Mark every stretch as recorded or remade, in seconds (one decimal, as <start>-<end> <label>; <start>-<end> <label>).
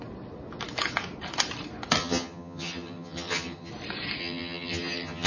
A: 0.0-2.0 recorded; 2.0-3.7 remade; 3.7-4.2 recorded; 4.2-5.3 remade